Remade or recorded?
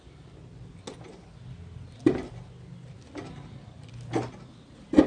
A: recorded